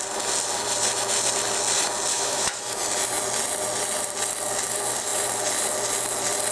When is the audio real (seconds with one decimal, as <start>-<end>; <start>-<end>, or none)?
0.0-2.1; 2.8-6.5